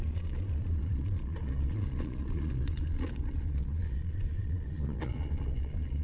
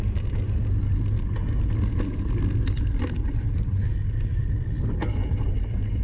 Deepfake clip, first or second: first